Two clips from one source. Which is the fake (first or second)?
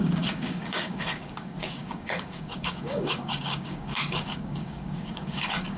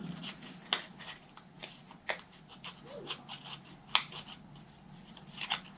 first